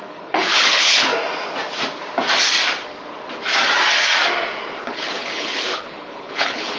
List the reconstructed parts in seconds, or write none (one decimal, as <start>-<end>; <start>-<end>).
0.0-1.1; 4.8-6.8